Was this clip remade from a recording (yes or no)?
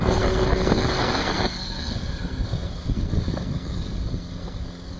yes